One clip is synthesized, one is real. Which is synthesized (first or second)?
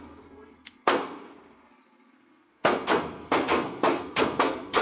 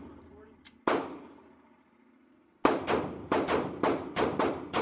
first